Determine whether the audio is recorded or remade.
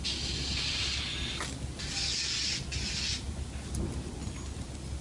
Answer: recorded